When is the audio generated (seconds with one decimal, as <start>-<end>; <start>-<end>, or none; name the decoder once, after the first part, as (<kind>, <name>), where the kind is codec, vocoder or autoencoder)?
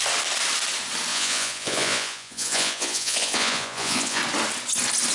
1.1-4.2 (vocoder, Vocos)